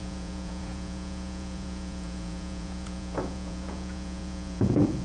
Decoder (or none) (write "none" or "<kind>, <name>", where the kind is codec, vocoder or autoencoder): vocoder, Vocos